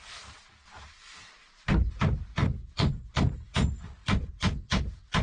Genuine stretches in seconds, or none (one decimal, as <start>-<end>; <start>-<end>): 0.0-2.4; 3.1-4.0; 4.6-5.2